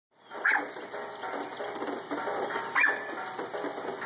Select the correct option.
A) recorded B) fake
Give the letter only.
A